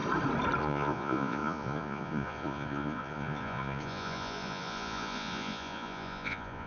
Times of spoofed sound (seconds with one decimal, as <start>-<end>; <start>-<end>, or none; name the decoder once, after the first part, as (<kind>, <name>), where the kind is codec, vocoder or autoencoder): 0.6-6.7 (vocoder, Vocos)

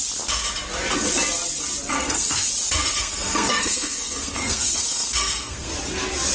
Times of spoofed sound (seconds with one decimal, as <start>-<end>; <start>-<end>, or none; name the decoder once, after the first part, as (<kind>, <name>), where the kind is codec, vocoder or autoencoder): 1.9-2.5 (codec, SNAC); 2.9-5.7

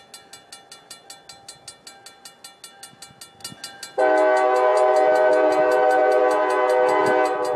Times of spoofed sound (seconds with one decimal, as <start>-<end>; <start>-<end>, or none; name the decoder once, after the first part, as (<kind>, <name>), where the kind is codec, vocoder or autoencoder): none

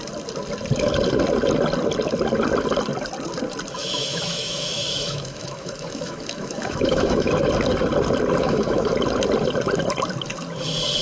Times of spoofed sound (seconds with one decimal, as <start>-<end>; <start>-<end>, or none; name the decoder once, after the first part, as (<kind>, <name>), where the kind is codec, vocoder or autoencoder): 3.8-7.3 (autoencoder, DAC-VAE); 8.4-8.9

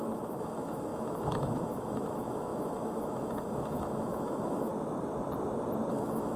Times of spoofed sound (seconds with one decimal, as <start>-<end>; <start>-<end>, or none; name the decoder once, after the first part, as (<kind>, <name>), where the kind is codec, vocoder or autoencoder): 0.0-4.7 (autoencoder, DAC-VAE); 5.9-6.4

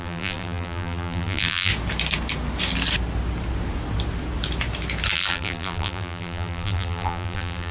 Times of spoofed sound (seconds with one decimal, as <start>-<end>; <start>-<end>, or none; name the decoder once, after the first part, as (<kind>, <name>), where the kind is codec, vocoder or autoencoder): 0.0-1.7 (vocoder, BigVGAN v2); 5.1-7.7